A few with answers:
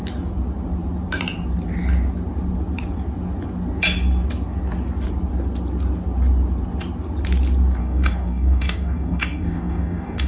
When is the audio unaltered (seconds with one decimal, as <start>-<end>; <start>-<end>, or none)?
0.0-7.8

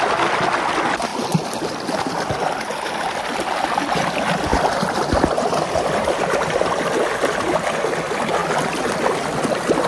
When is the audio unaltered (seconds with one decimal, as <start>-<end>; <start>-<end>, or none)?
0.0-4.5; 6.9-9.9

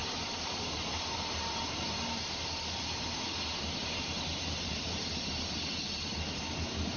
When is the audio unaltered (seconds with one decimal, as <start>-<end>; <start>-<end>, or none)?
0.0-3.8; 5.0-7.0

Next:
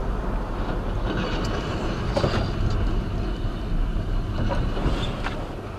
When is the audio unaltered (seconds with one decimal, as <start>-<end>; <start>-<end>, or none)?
0.0-3.9; 4.6-5.8

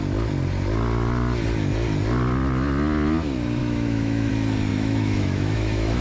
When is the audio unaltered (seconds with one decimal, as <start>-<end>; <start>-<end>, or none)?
0.0-3.6; 4.3-4.7

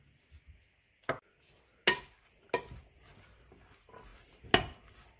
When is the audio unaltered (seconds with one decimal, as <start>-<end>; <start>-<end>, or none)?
0.0-5.2

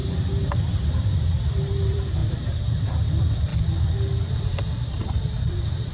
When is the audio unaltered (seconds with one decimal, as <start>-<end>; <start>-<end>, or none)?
3.5-4.4

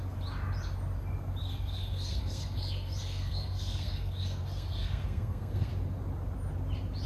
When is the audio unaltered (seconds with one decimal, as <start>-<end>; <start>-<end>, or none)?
0.0-1.4; 5.7-7.1